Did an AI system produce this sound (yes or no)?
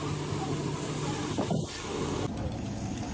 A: no